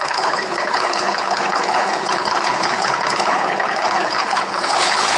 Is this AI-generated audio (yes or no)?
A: yes